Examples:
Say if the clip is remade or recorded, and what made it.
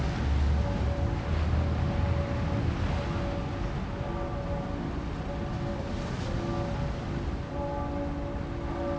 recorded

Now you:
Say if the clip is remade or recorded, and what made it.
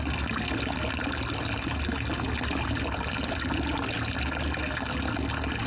recorded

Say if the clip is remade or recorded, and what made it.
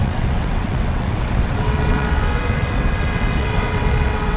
remade, vocoder, WaveNeXt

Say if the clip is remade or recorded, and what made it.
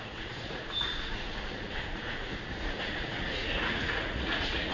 remade, vocoder, Vocos